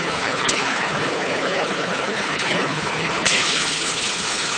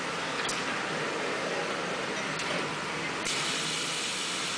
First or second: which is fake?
first